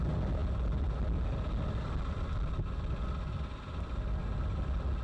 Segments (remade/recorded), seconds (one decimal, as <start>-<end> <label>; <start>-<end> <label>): 0.0-5.0 recorded